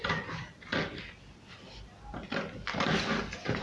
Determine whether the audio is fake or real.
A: real